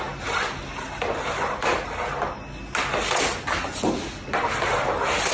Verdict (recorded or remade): recorded